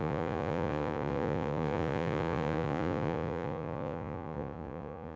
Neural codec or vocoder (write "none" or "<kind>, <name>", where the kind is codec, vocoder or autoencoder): vocoder, Vocos